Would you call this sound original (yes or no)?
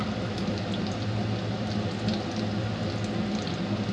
yes